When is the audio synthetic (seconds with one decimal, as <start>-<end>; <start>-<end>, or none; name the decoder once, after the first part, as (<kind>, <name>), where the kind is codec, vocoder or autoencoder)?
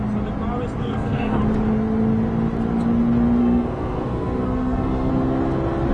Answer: 0.8-1.4 (codec, SNAC); 3.4-5.1